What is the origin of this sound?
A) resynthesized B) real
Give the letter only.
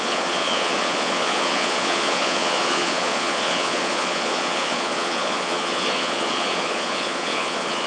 A